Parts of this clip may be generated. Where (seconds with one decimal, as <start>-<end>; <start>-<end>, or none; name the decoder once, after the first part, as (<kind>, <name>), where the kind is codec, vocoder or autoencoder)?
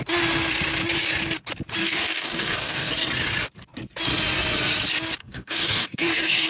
1.8-2.9 (codec, DAC); 5.2-6.5